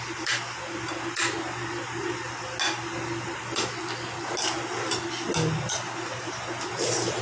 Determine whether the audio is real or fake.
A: real